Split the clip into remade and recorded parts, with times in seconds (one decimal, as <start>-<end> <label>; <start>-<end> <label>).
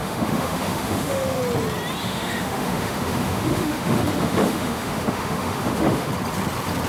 0.0-1.4 remade; 1.4-2.0 recorded; 2.0-6.1 remade; 6.1-6.9 recorded